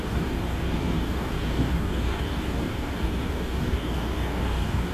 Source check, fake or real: fake